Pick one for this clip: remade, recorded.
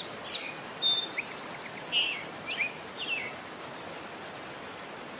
recorded